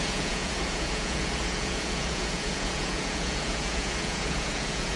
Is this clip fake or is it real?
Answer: fake